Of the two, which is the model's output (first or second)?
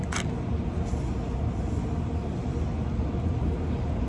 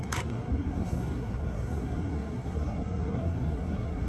second